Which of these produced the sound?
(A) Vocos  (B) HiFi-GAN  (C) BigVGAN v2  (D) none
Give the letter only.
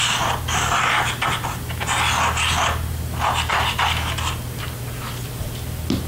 D